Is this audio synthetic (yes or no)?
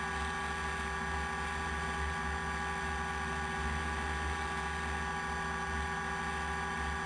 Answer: no